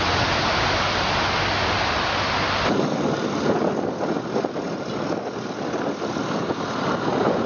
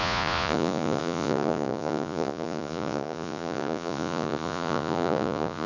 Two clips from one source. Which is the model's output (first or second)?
second